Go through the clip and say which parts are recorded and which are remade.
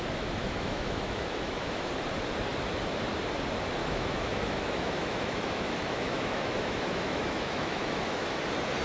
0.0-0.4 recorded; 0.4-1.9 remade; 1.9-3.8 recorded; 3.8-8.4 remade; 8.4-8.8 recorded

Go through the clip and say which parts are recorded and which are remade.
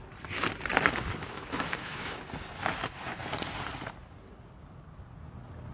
0.0-0.7 recorded; 0.7-2.2 remade; 2.2-5.7 recorded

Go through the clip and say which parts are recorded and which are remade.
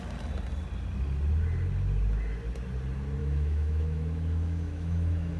0.0-3.2 recorded; 3.2-5.4 remade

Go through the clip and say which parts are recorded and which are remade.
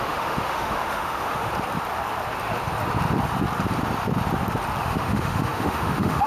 0.0-1.5 remade; 1.5-4.8 recorded; 4.8-6.3 remade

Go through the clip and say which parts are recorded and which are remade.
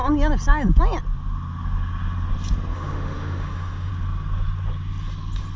0.0-2.7 recorded; 2.7-3.9 remade; 3.9-5.6 recorded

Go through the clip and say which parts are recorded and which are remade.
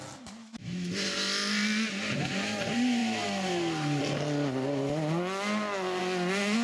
0.0-0.4 recorded; 0.4-0.9 remade; 0.9-6.6 recorded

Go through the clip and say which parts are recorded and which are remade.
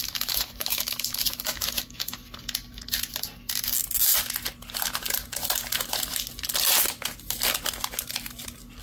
0.0-2.1 remade; 2.1-8.8 recorded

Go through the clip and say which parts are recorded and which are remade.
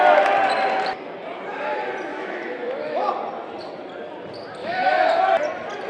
0.0-2.1 recorded; 2.1-3.1 remade; 3.1-4.6 recorded; 4.6-5.1 remade; 5.1-5.9 recorded